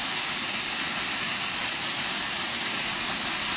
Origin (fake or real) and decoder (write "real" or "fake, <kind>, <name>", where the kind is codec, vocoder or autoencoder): real